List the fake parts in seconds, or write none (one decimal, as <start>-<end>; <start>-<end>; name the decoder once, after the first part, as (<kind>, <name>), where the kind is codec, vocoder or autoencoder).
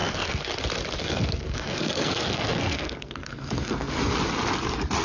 0.0-0.5 (codec, SNAC); 1.0-4.0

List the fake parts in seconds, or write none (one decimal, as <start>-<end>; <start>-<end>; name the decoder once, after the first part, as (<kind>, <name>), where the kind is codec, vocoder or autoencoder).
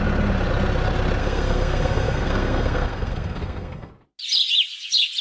1.2-3.9 (codec, SNAC)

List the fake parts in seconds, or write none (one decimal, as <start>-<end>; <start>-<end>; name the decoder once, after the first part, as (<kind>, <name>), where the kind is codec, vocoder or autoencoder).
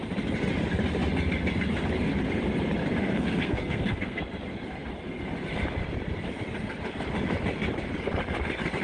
3.0-4.2 (codec, SNAC)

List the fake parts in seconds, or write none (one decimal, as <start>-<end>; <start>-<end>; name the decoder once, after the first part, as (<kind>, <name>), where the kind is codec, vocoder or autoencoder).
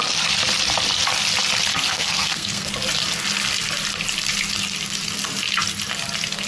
1.7-2.7 (codec, SNAC)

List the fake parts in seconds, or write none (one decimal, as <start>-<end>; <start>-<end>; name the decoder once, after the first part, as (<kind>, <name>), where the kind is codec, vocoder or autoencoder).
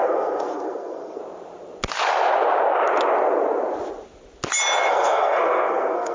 0.0-1.2 (codec, SNAC); 4.9-6.1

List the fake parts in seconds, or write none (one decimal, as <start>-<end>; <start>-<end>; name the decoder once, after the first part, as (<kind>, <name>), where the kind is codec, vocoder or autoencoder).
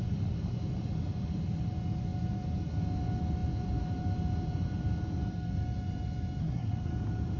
6.4-6.9 (codec, SNAC)